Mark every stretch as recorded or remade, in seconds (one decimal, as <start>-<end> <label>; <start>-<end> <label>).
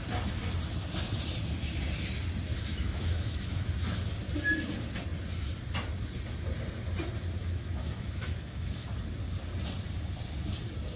0.0-2.5 recorded; 2.5-3.7 remade; 3.7-7.4 recorded; 7.4-8.9 remade; 8.9-11.0 recorded